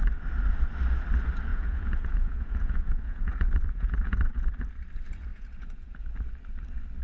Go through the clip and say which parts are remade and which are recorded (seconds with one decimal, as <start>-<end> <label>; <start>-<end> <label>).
0.0-1.5 recorded; 1.5-4.5 remade; 4.5-5.3 recorded; 5.3-6.1 remade; 6.1-7.0 recorded